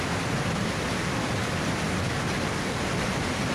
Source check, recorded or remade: recorded